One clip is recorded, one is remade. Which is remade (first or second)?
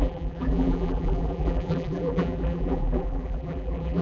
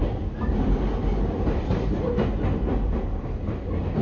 first